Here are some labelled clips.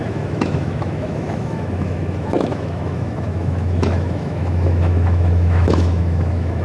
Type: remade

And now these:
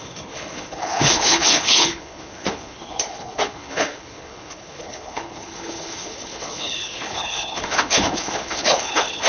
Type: remade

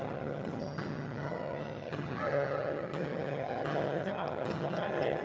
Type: remade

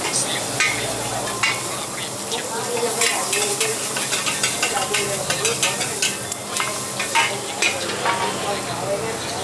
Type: recorded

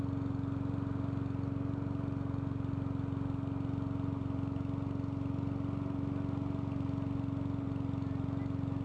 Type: recorded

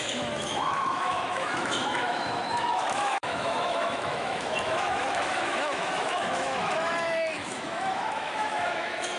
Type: remade